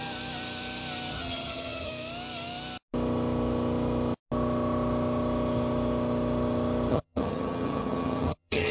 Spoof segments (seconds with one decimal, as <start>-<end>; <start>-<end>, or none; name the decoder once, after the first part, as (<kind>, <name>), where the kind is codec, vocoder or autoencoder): 1.1-1.9 (vocoder, HiFi-GAN); 6.9-8.7